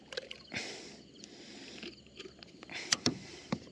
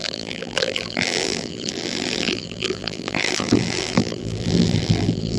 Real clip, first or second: first